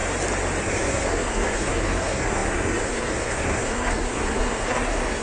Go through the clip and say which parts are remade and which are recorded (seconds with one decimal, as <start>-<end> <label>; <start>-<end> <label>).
0.0-0.6 recorded; 0.6-5.2 remade